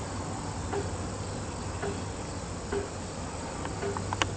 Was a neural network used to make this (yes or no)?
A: no